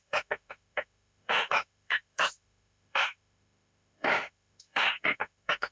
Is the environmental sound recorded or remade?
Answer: remade